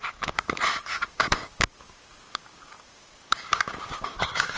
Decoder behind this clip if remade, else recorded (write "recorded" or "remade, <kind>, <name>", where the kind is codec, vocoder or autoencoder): remade, codec, DAC